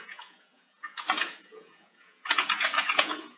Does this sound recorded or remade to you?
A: remade